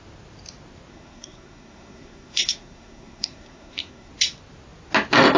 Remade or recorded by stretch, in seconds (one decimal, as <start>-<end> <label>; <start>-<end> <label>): 0.0-0.9 recorded; 0.9-4.1 remade; 4.1-5.4 recorded